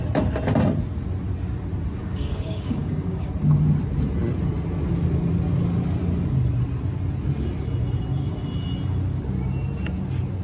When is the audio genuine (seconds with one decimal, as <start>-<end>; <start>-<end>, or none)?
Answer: 0.0-2.0; 3.3-10.4